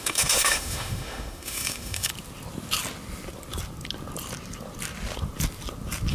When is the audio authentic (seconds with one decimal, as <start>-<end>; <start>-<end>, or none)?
2.1-6.1